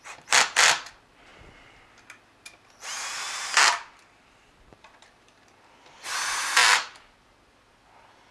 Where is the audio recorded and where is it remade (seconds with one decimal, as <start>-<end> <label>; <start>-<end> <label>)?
0.0-8.3 recorded